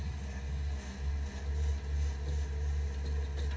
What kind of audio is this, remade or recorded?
recorded